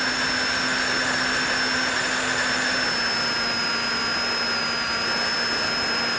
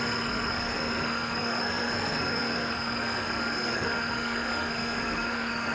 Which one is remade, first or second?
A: second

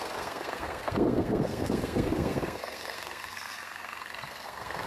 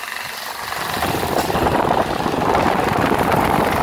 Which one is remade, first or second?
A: first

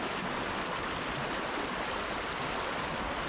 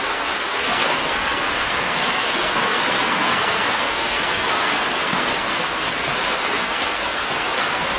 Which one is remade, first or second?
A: second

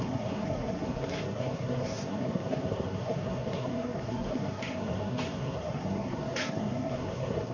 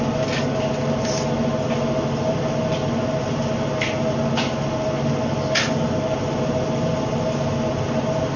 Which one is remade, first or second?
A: first